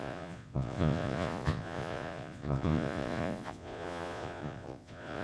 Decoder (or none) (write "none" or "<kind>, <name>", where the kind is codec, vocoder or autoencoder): vocoder, Vocos